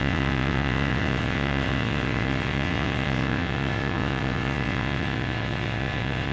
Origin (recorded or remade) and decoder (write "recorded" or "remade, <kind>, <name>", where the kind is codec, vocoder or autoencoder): remade, vocoder, WaveNeXt